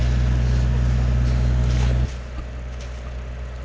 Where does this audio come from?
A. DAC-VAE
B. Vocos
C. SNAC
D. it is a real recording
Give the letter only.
D